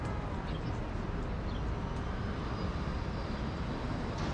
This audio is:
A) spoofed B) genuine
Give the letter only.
B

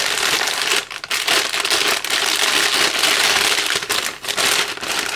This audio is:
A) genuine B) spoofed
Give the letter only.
A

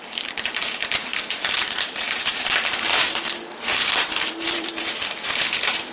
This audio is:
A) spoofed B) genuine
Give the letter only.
A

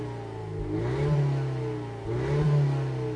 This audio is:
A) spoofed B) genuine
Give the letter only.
B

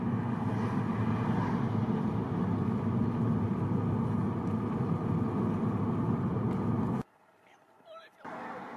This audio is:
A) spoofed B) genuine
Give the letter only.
B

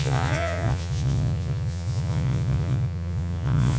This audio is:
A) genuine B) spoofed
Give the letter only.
B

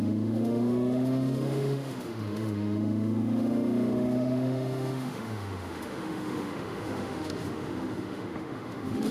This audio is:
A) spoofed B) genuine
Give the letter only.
A